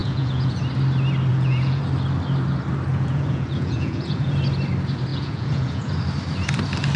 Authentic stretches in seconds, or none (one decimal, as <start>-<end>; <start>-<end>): 0.6-1.3; 1.8-2.9; 4.4-5.1; 5.9-7.0